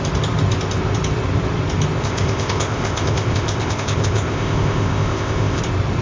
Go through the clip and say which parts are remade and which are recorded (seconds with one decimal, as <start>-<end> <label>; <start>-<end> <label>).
0.0-2.0 recorded; 2.0-5.6 remade; 5.6-6.0 recorded